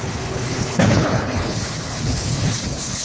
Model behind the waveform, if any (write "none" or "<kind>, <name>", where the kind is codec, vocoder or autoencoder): codec, HILCodec